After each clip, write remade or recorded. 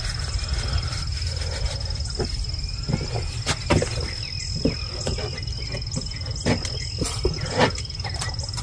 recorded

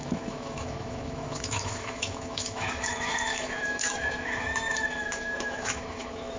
remade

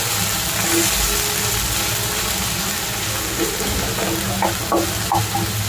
recorded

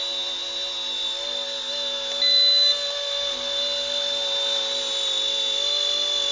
recorded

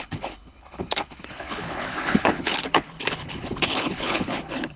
remade